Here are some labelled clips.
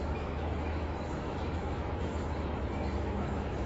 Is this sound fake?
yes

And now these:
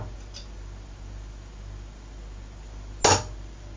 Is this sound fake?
no